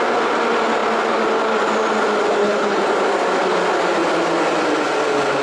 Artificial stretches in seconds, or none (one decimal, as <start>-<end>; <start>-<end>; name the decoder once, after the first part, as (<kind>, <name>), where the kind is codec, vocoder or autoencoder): 2.4-2.9 (codec, HILCodec)